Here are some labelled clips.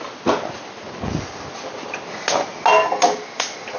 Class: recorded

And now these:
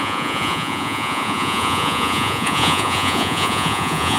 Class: remade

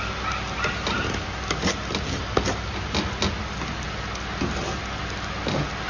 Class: recorded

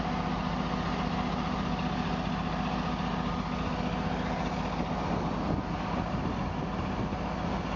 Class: recorded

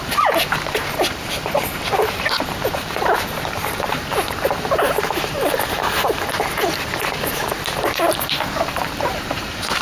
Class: remade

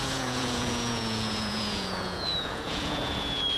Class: remade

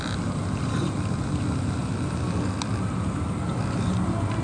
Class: recorded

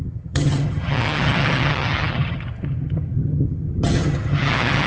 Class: remade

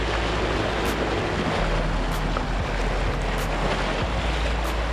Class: recorded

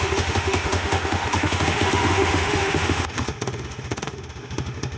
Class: remade